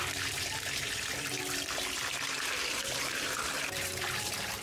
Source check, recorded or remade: remade